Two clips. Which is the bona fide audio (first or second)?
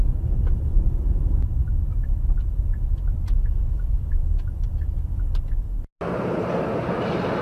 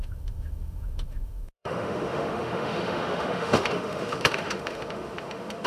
first